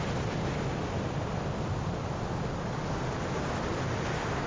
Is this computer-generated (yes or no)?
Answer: no